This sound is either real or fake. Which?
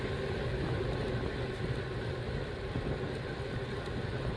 real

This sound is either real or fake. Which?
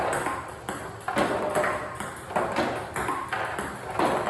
real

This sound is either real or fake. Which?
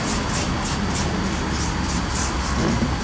real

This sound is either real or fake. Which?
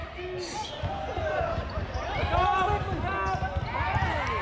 real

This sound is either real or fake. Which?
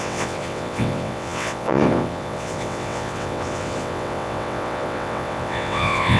fake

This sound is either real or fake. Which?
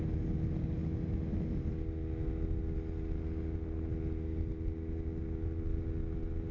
real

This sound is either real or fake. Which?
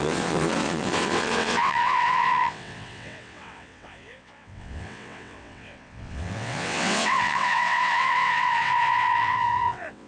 fake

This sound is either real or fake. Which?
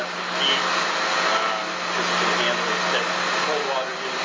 real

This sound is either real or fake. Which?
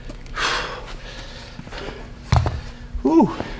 real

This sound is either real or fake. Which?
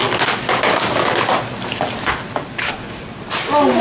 real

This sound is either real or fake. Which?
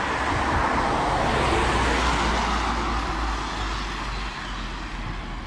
real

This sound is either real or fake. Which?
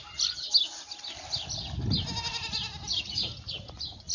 real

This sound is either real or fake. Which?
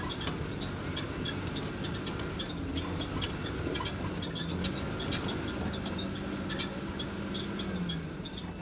real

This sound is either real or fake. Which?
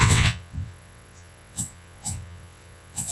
fake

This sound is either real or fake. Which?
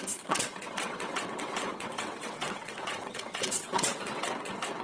fake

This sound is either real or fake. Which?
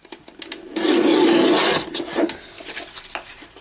real